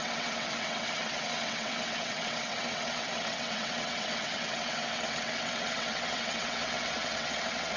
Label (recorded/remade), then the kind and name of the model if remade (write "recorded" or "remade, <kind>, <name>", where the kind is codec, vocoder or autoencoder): remade, vocoder, WaveNeXt